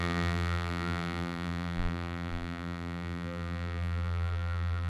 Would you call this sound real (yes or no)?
no